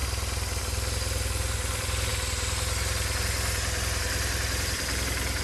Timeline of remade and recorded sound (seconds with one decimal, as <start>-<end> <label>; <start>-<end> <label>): 0.0-0.6 recorded; 0.6-2.1 remade; 2.1-4.0 recorded; 4.0-5.4 remade